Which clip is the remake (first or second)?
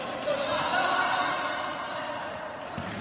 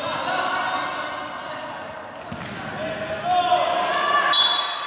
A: first